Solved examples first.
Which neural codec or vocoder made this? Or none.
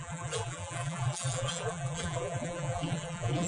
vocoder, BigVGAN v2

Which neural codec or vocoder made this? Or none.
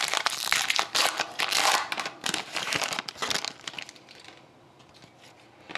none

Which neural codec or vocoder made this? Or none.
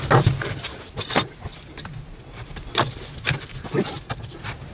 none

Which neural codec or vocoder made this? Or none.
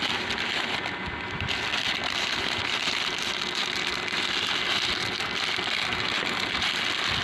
none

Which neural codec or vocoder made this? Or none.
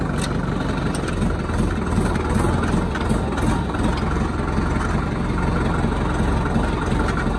none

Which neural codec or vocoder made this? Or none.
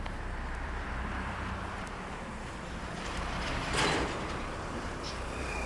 vocoder, BigVGAN v2